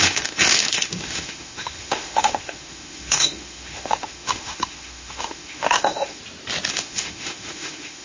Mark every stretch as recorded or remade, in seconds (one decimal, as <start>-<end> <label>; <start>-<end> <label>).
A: 0.0-6.2 remade; 6.2-6.7 recorded; 6.7-8.0 remade